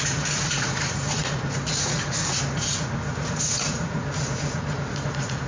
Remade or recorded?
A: remade